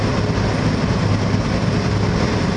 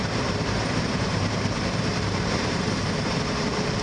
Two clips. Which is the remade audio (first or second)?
second